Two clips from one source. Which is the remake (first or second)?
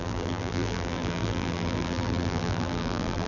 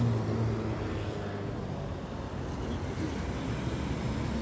first